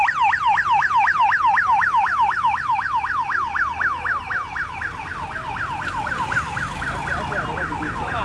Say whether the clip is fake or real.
real